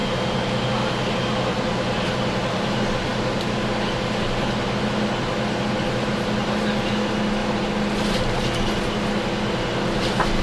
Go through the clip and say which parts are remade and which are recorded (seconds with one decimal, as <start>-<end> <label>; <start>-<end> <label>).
0.0-10.4 recorded